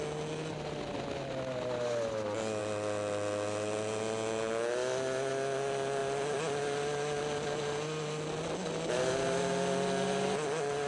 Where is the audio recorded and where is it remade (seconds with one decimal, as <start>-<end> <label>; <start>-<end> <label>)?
0.0-10.9 recorded